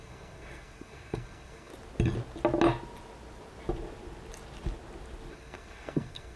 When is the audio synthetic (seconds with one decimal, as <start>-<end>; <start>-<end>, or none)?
0.0-1.7; 5.3-6.4